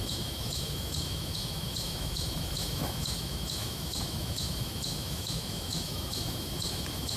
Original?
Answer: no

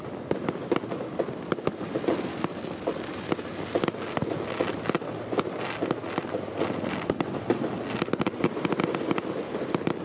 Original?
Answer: yes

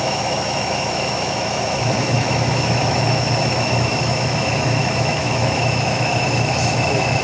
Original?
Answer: no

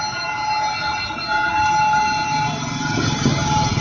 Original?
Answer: yes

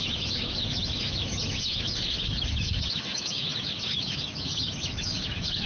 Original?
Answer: no